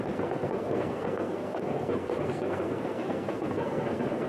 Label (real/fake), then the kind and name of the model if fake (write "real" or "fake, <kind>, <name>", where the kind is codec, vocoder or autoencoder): fake, codec, SNAC